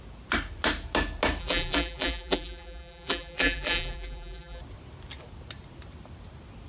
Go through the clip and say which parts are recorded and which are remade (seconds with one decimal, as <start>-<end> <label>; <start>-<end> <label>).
0.0-1.4 recorded; 1.4-4.6 remade; 4.6-6.7 recorded